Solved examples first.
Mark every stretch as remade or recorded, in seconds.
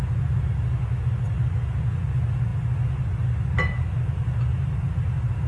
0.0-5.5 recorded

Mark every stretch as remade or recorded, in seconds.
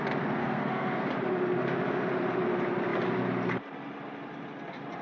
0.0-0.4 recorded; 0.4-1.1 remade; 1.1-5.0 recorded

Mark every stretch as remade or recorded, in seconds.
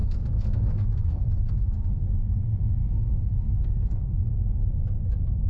0.0-2.1 remade; 2.1-2.8 recorded; 2.8-4.2 remade; 4.2-5.5 recorded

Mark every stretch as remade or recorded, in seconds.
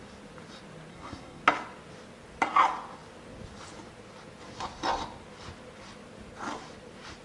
0.0-0.9 recorded; 0.9-1.4 remade; 1.4-7.2 recorded